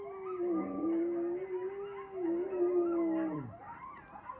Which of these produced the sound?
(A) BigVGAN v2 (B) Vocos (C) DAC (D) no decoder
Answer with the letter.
D